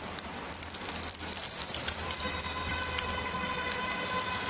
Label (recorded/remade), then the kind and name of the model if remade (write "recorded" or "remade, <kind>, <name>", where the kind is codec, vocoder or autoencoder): recorded